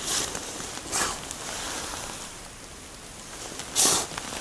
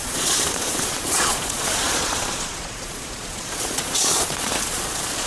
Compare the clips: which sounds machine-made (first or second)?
second